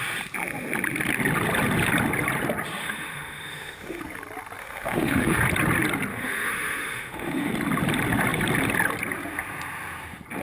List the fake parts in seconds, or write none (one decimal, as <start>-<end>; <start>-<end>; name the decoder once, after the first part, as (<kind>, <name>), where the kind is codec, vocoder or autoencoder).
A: 2.8-4.0 (autoencoder, DAC-VAE); 4.6-5.4; 6.1-7.5